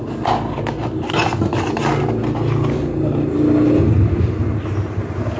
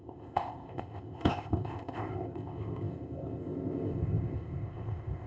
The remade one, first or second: second